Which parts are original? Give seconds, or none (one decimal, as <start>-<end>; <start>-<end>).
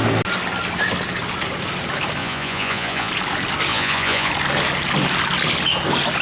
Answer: 0.0-2.2; 3.1-3.7; 4.3-6.2